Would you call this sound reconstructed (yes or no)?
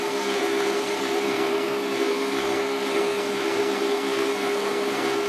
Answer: yes